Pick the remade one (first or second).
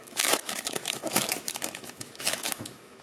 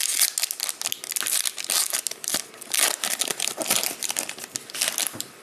first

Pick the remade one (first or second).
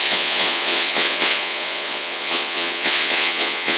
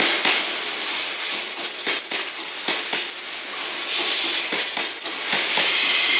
first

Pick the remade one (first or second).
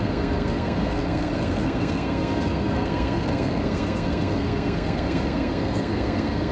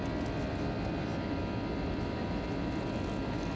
first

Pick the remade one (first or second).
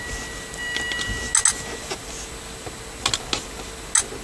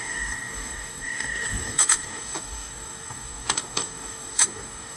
second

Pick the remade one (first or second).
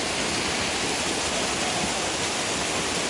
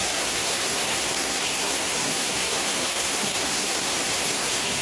second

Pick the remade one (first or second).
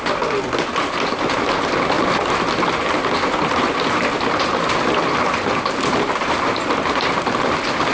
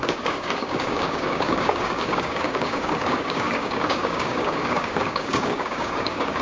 second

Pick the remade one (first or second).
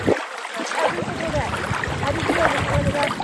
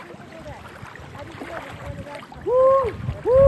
first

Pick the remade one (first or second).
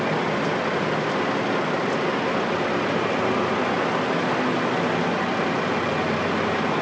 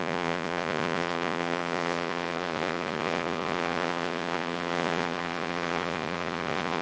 second